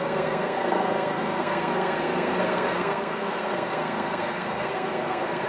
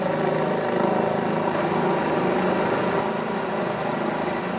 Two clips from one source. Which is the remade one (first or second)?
first